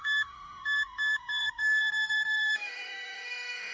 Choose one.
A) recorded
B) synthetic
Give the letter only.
B